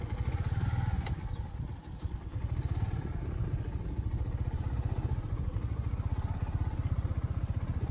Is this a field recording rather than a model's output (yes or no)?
yes